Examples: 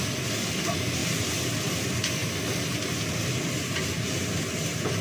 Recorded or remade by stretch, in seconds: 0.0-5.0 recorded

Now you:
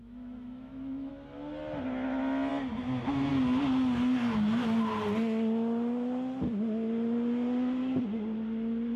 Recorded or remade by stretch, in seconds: 0.0-1.1 remade; 1.1-9.0 recorded

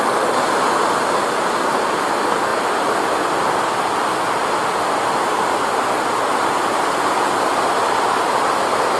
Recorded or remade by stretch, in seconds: 0.0-9.0 recorded

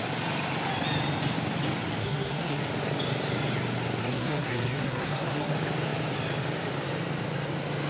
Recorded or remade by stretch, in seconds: 0.0-2.0 recorded; 2.0-2.6 remade; 2.6-4.0 recorded; 4.0-5.5 remade; 5.5-7.9 recorded

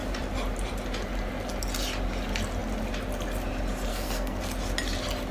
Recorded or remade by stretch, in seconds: 0.0-3.9 recorded; 3.9-4.4 remade; 4.4-5.3 recorded

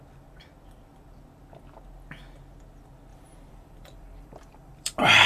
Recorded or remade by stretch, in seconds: 0.0-3.1 recorded; 3.1-5.3 remade